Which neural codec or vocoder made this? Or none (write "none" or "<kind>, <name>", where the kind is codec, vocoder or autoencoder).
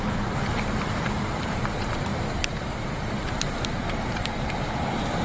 vocoder, BigVGAN v2